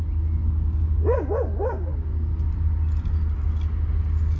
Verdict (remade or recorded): recorded